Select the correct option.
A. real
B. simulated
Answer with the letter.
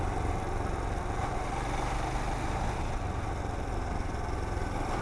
A